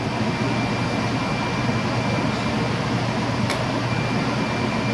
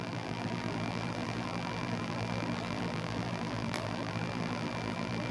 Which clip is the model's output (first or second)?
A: second